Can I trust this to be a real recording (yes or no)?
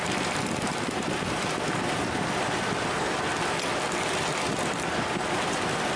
yes